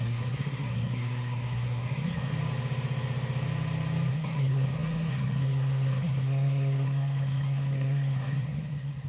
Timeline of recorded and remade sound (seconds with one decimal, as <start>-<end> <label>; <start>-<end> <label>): 0.0-2.3 remade; 2.3-4.1 recorded; 4.1-9.1 remade